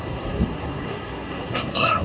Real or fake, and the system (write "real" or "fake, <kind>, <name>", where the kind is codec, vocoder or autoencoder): fake, codec, SNAC